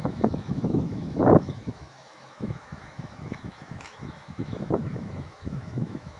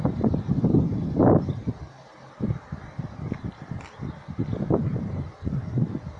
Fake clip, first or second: first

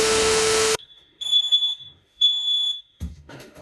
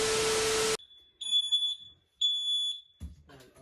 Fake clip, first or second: first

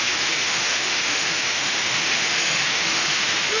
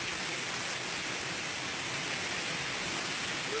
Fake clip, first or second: first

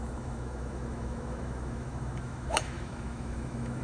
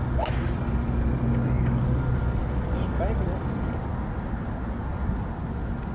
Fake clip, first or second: first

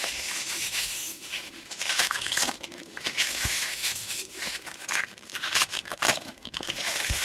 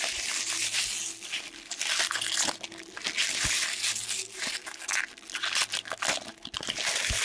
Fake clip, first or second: first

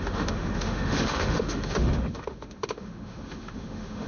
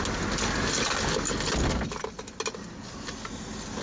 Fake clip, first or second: first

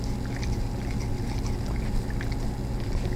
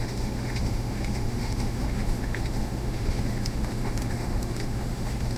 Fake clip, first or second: second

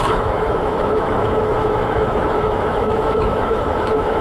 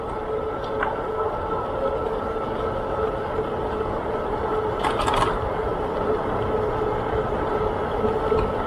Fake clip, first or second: first